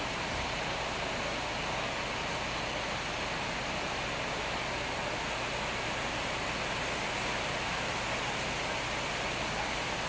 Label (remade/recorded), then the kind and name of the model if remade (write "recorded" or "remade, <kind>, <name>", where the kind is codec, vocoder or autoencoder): recorded